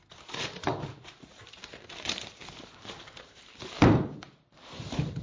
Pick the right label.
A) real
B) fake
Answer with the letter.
B